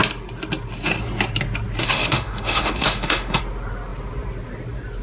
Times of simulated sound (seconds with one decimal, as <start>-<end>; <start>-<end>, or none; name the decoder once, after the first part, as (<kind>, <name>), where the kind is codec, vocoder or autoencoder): 1.8-3.4 (autoencoder, DAC-VAE)

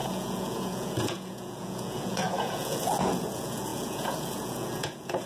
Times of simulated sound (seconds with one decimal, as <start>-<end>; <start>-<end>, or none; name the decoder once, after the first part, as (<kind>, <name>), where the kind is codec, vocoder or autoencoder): 0.0-5.3 (vocoder, Vocos)

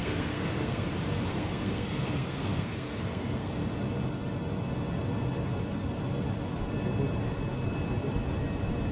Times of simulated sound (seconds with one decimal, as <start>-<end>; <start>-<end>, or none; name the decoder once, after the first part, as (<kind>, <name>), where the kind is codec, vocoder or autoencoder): 0.0-0.9 (codec, SNAC); 1.3-3.5